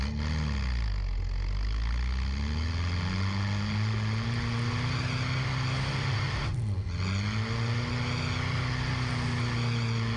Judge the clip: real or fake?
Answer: real